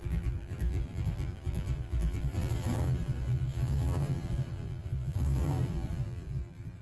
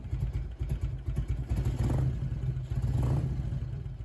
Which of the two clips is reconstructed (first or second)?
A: first